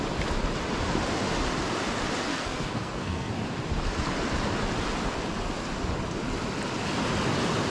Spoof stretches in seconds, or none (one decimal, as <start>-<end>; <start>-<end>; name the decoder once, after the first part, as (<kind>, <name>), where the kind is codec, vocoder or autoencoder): 2.3-3.3 (codec, SNAC)